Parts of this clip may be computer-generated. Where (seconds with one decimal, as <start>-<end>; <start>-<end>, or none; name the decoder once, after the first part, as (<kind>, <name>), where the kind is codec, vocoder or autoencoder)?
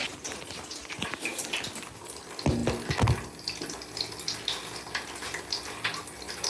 none